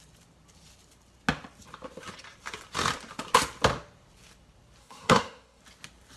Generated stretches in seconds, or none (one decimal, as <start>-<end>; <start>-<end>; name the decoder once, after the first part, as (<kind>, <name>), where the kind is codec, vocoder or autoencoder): 4.8-5.6 (codec, SNAC)